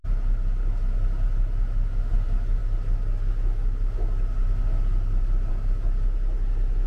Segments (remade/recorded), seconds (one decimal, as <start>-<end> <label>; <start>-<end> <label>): 0.0-6.9 recorded